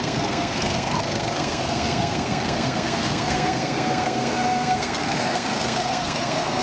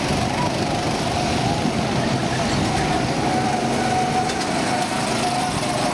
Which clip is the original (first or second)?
second